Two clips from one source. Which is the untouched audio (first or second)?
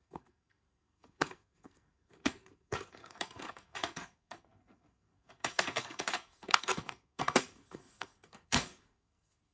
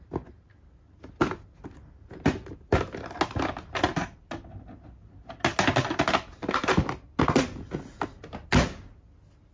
second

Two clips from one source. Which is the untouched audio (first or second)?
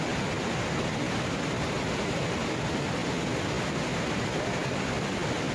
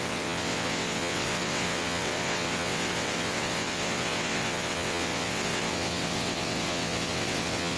first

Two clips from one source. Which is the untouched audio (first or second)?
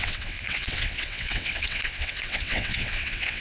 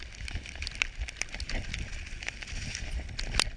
second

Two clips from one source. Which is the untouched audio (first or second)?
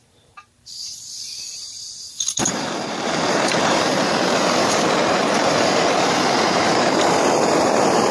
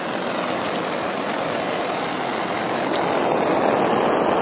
second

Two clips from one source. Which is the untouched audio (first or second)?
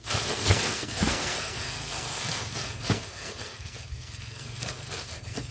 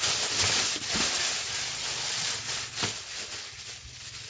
second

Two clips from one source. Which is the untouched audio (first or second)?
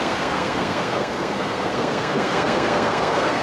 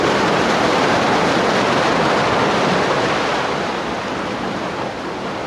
second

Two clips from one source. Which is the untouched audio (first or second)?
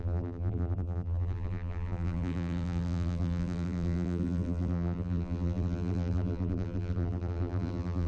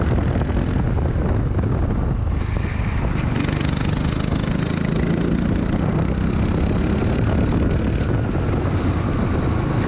second